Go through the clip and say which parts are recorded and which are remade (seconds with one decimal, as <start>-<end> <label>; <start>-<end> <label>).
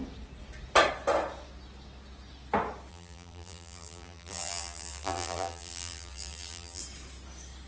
0.0-2.9 recorded; 2.9-6.8 remade; 6.8-7.7 recorded